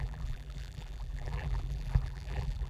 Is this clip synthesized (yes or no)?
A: yes